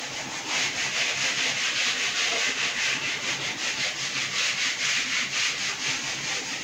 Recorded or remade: recorded